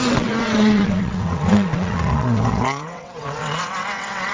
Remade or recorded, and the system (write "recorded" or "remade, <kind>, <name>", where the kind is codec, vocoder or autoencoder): remade, vocoder, WaveNeXt